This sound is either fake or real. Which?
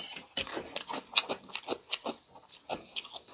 real